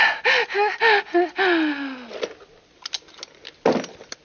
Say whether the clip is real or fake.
real